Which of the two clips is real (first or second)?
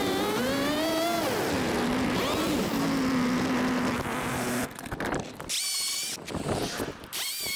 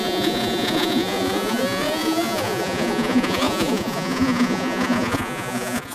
first